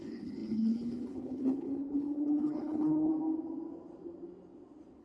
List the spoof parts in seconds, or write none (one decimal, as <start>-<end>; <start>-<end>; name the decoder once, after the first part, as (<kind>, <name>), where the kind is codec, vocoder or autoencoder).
0.0-3.1 (codec, HILCodec)